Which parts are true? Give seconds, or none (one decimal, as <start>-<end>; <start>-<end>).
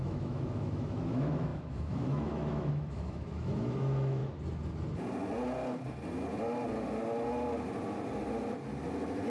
4.2-9.3